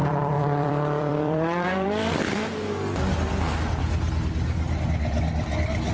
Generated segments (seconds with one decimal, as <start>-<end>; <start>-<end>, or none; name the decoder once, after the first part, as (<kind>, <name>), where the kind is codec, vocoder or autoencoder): 0.0-2.2 (vocoder, BigVGAN v2)